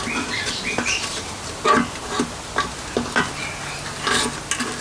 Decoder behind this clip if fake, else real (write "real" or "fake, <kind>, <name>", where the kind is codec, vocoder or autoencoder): real